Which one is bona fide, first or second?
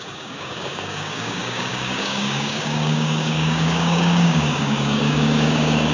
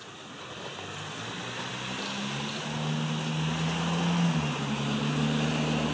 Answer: second